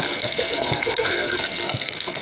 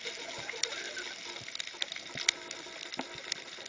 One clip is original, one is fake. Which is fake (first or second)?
first